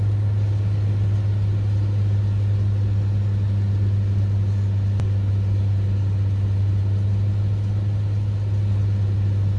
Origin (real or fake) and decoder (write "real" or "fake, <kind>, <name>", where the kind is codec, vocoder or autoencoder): real